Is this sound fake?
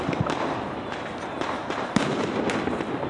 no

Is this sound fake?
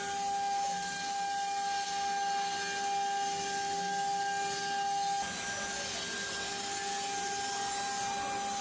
no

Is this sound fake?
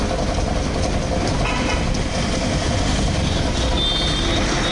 no